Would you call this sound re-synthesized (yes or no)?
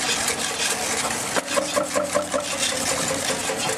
no